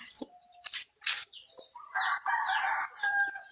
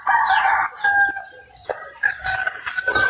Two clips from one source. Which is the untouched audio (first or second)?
second